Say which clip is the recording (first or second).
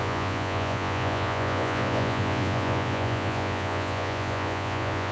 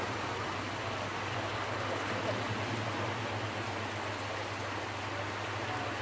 second